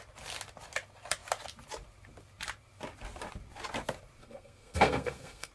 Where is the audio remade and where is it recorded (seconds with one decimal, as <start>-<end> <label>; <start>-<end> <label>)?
0.0-4.2 recorded; 4.2-5.5 remade